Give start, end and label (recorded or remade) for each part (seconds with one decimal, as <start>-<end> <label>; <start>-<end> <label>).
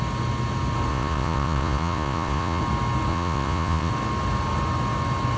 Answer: 0.0-0.9 recorded; 0.9-2.6 remade; 2.6-3.1 recorded; 3.1-3.9 remade; 3.9-5.4 recorded